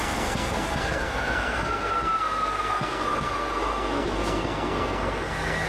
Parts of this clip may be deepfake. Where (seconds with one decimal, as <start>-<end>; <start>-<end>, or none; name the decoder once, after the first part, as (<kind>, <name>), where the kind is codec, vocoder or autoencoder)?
0.0-5.7 (codec, SNAC)